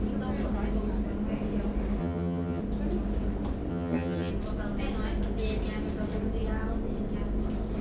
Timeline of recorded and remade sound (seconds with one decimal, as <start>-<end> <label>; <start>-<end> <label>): 0.0-2.0 recorded; 2.0-2.6 remade; 2.6-3.7 recorded; 3.7-4.3 remade; 4.3-7.8 recorded

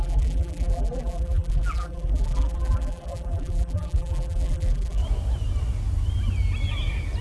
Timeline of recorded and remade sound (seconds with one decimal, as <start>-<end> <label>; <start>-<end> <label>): 0.0-5.0 remade; 5.0-7.2 recorded

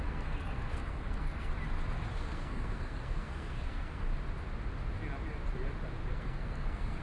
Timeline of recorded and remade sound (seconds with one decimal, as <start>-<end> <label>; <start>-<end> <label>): 0.0-1.5 remade; 1.5-2.1 recorded; 2.1-4.1 remade; 4.1-6.1 recorded; 6.1-7.0 remade